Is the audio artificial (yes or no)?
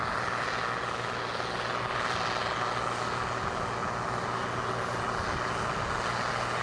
no